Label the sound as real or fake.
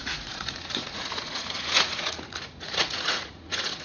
fake